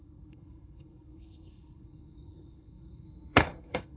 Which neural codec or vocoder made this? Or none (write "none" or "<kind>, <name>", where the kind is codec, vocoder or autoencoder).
codec, SNAC